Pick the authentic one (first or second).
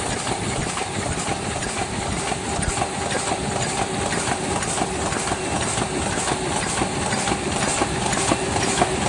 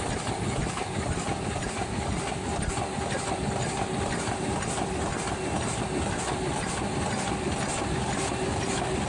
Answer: second